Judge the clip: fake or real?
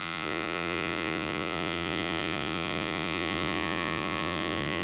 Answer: fake